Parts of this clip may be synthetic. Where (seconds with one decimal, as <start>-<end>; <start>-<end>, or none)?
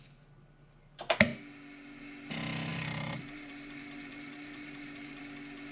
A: 2.7-5.2